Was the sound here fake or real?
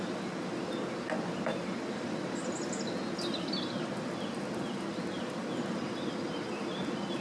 real